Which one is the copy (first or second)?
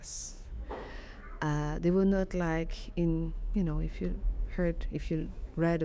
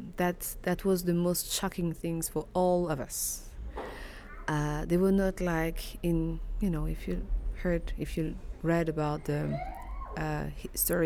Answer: first